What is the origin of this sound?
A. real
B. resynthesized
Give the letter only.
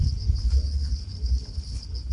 B